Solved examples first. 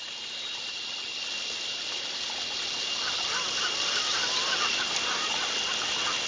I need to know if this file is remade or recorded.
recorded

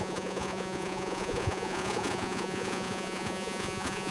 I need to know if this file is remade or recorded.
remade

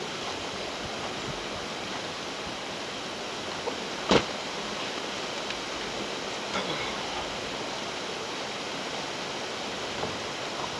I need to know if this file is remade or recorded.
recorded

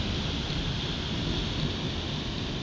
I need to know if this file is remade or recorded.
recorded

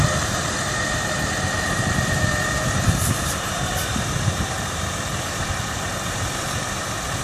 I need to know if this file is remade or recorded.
remade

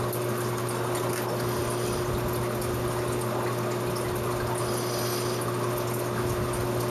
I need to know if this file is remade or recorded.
recorded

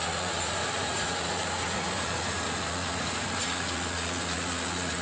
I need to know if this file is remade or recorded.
remade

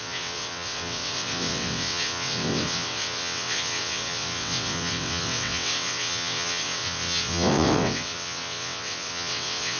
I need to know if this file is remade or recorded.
remade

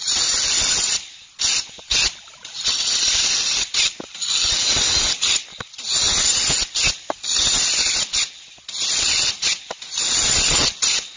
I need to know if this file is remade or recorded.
recorded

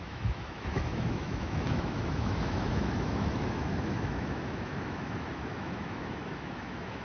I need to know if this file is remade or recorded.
remade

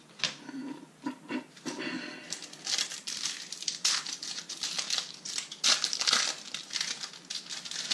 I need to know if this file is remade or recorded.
recorded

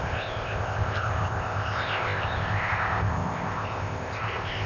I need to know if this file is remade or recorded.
remade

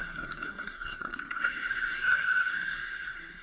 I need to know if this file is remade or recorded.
remade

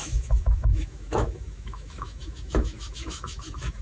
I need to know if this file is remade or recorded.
remade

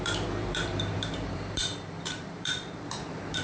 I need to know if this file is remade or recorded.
remade